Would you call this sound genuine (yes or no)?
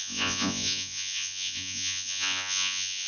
no